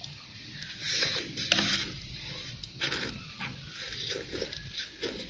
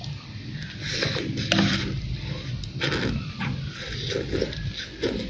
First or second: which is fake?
first